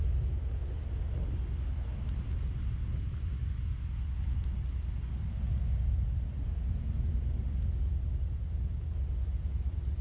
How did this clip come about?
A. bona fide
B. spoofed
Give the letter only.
A